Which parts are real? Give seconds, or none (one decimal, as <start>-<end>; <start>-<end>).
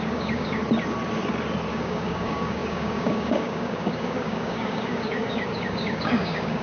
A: 0.6-1.7